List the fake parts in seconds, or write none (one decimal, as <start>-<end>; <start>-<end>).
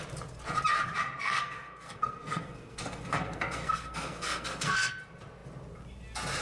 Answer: 1.2-5.0